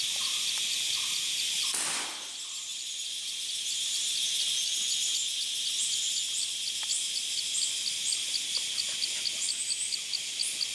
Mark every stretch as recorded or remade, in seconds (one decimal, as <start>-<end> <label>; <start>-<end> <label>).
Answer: 0.0-10.7 recorded